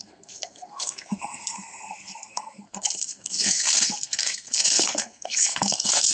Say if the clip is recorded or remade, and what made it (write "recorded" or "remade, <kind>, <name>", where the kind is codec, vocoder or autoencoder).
remade, codec, SNAC